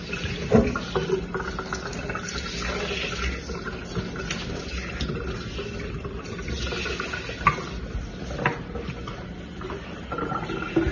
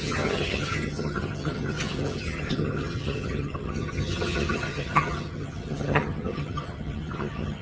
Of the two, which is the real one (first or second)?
first